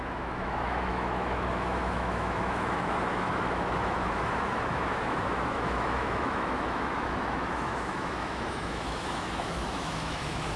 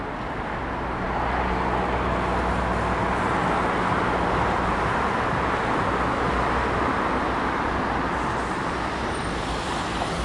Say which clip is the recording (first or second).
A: second